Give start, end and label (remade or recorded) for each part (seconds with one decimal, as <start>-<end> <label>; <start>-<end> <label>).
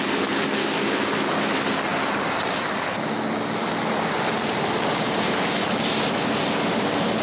0.0-7.2 recorded